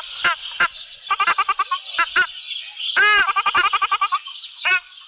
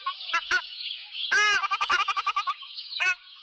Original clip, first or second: first